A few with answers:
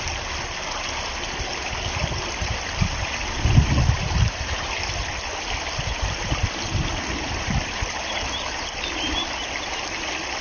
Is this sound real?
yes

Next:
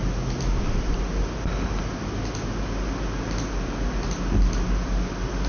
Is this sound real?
yes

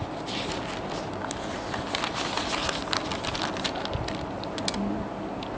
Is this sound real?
yes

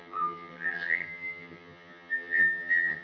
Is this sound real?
no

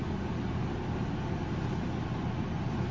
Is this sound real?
yes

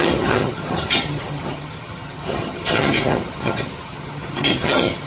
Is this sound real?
no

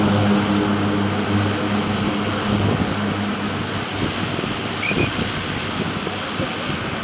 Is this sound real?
yes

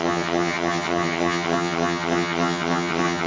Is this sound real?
no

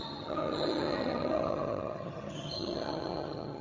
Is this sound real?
no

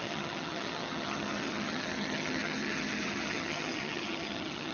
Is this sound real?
no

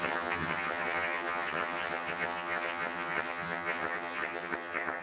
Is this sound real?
no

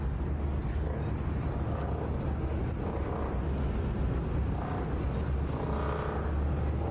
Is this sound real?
yes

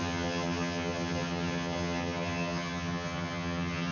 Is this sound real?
no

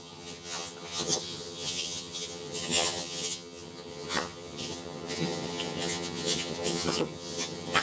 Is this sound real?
no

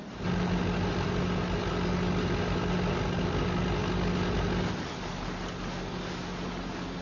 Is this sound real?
yes